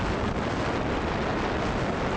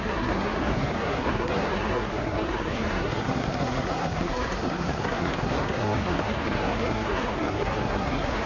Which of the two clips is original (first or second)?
first